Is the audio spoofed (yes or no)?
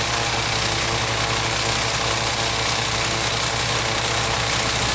no